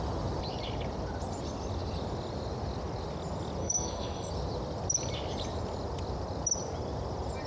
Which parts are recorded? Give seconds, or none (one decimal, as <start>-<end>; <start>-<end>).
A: 0.0-3.6; 4.3-7.5

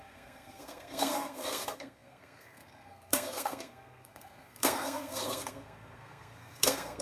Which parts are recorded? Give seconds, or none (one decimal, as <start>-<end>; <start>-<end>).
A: none

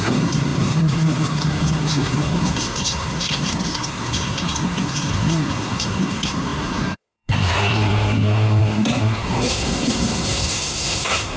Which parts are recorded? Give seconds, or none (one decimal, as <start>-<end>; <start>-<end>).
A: none

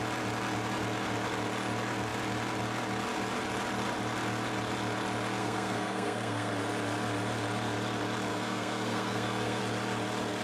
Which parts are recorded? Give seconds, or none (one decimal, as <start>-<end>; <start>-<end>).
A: 0.0-5.4; 6.5-8.3; 9.6-10.4

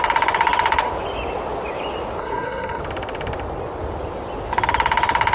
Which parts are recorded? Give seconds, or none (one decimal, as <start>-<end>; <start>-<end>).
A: 0.0-2.2; 2.8-5.3

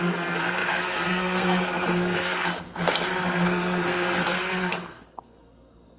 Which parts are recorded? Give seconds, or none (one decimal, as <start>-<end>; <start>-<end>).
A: none

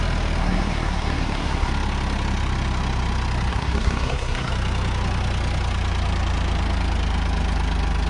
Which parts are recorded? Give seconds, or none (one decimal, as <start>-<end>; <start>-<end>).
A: 0.0-0.4; 1.7-3.5; 4.5-8.1